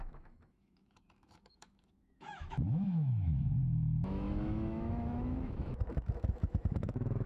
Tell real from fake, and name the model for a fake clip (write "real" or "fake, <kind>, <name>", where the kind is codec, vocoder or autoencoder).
fake, autoencoder, DAC-VAE